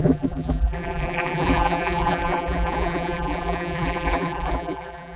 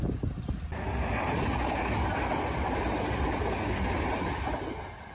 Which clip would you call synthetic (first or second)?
first